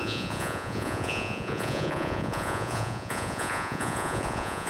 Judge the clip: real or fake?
fake